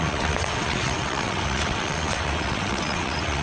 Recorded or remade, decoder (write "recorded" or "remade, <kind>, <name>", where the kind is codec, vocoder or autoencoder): remade, vocoder, WaveNeXt